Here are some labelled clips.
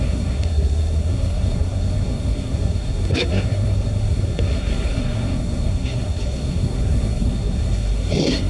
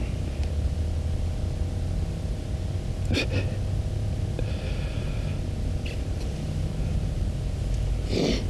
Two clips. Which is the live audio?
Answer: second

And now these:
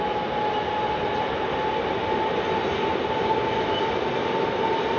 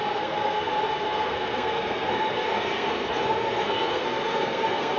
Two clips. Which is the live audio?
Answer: first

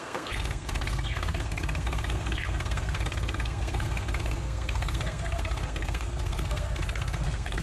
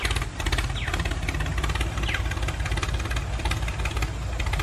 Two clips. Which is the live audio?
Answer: second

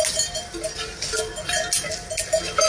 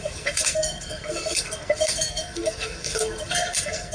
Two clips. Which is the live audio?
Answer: first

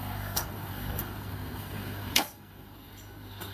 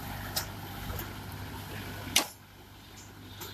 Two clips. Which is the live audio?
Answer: second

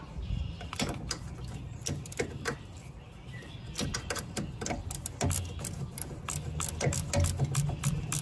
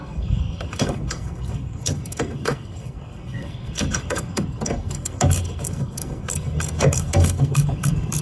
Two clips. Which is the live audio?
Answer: first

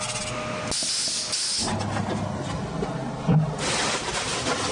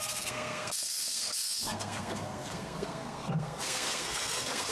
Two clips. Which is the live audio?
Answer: first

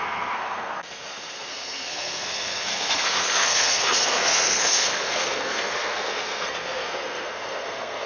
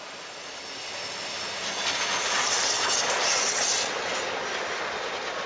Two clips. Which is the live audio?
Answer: second